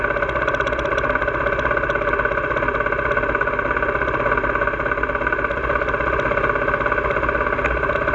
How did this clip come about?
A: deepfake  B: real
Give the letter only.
B